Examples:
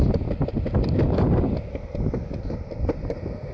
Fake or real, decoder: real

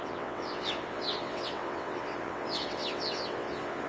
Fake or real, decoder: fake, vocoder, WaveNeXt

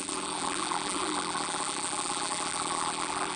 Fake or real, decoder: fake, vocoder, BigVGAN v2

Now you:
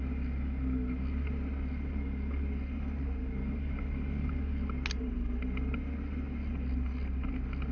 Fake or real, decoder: real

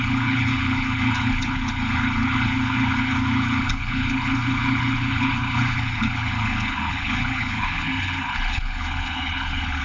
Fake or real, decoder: fake, codec, HILCodec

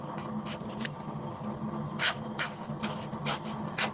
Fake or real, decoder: real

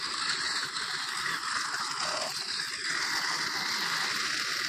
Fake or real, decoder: real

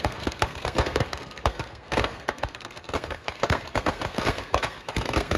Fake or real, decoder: fake, codec, SNAC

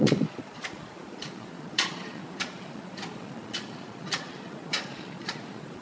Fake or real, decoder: fake, vocoder, Vocos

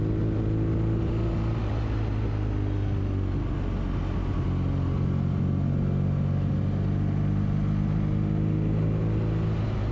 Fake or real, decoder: real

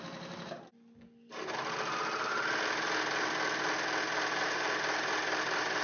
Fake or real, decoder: real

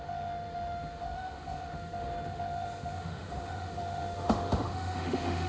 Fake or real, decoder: fake, autoencoder, DAC-VAE